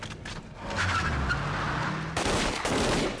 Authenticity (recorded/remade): recorded